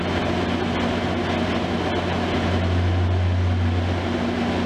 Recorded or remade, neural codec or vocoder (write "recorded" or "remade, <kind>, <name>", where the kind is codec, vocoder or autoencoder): recorded